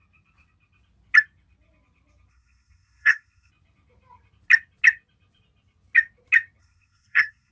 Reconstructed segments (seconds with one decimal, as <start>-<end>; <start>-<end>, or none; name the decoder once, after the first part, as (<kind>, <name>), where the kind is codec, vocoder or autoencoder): 2.3-3.5 (codec, SNAC); 6.6-7.5